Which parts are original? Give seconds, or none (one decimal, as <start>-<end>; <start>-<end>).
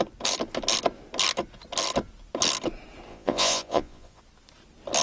0.0-3.1; 4.2-5.0